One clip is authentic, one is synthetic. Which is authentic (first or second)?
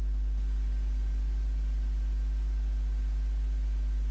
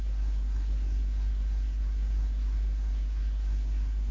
first